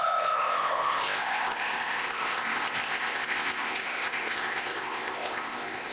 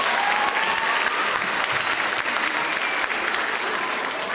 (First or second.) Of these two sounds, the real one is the second